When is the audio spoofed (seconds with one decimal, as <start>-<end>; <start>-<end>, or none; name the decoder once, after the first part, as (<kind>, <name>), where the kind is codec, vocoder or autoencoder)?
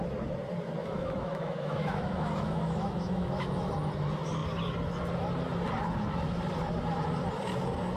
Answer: 0.8-3.7 (autoencoder, DAC-VAE)